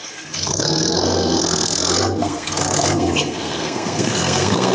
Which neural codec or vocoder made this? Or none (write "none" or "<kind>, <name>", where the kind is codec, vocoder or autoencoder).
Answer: codec, SNAC